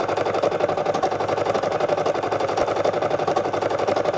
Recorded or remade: recorded